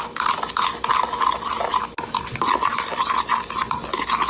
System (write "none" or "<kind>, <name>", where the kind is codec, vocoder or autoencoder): none